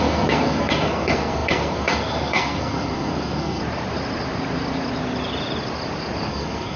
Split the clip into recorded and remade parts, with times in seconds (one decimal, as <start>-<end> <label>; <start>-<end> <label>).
0.0-3.6 remade; 3.6-6.3 recorded; 6.3-6.8 remade